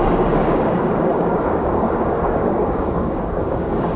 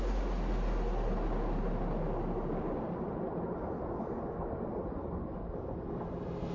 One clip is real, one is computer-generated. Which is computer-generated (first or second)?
first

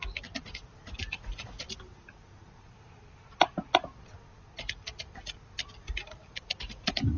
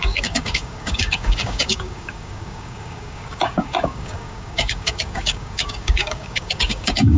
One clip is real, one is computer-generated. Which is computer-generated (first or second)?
second